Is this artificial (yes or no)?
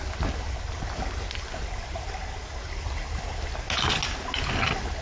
no